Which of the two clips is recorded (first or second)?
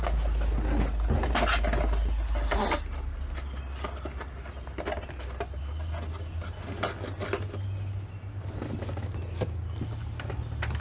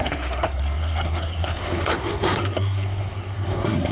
first